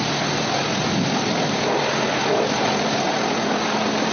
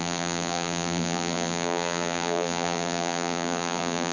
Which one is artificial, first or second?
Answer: second